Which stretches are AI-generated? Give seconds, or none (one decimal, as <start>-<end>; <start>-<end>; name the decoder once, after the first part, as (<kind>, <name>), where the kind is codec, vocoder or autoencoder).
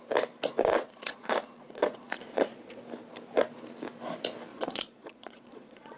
0.7-2.8 (vocoder, Vocos); 4.5-6.0